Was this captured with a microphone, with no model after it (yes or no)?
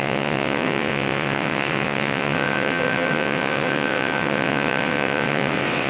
no